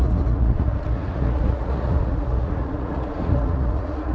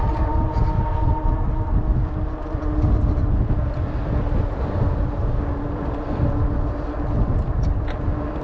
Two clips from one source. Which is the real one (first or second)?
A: second